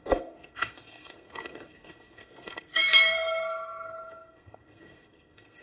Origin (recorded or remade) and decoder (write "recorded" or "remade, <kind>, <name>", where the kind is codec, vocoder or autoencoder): remade, codec, SNAC